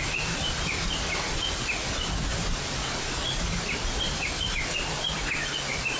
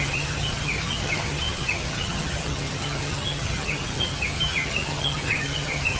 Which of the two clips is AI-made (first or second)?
second